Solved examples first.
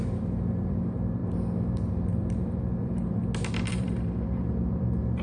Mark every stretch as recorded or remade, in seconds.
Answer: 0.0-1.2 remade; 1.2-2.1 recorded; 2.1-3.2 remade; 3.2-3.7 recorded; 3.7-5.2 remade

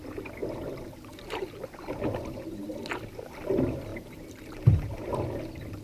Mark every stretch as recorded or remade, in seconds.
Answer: 0.0-3.9 recorded; 3.9-5.1 remade; 5.1-5.8 recorded

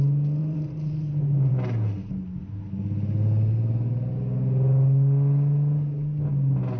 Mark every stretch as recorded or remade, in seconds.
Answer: 0.0-0.4 recorded; 0.4-1.5 remade; 1.5-6.8 recorded

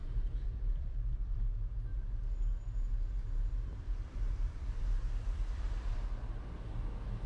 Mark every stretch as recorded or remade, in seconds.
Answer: 0.0-1.4 remade; 1.4-3.5 recorded; 3.5-5.7 remade; 5.7-7.3 recorded

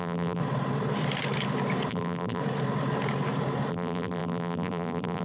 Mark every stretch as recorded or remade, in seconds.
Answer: 0.0-0.4 remade; 0.4-1.9 recorded; 1.9-2.4 remade; 2.4-3.7 recorded; 3.7-5.2 remade

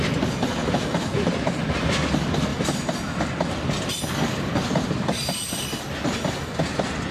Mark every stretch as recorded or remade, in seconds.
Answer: 0.0-2.5 recorded; 2.5-5.5 remade; 5.5-7.1 recorded

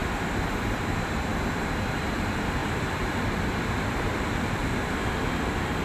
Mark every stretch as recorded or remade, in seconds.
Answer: 0.0-0.6 recorded; 0.6-5.8 remade

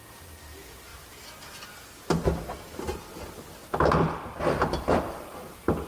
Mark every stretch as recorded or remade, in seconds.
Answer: 0.0-5.9 remade